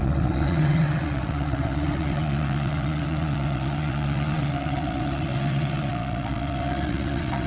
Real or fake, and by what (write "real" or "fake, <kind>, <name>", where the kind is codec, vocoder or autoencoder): fake, vocoder, WaveNeXt